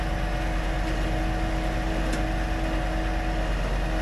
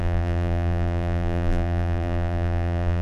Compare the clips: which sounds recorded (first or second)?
first